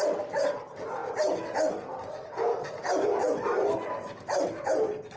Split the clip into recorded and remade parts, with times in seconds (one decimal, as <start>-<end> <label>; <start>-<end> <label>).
0.0-5.2 recorded